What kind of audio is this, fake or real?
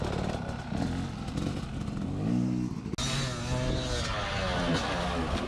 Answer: real